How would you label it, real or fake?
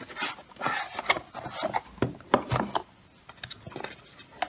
real